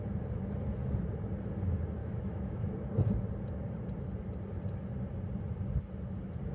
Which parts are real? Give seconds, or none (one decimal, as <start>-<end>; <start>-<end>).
0.0-2.0; 2.7-6.5